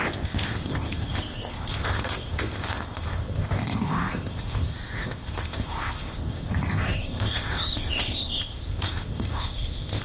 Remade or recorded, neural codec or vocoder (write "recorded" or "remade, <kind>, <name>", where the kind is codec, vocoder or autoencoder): remade, codec, ZipCodec